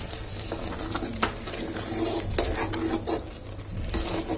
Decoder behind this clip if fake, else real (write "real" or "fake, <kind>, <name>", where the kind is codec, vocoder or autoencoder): real